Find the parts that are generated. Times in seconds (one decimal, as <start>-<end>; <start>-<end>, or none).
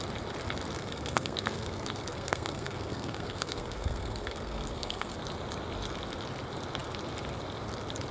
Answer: 0.8-5.2